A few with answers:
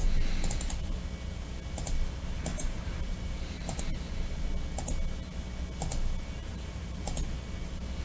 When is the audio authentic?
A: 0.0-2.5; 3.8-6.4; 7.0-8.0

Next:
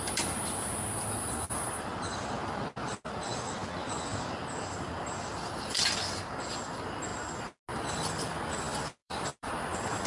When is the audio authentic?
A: 0.0-9.0